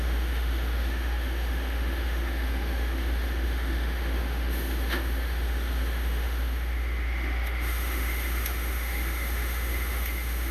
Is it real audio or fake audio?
fake